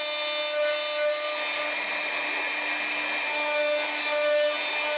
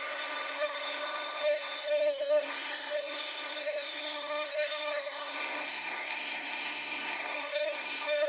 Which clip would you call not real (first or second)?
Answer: second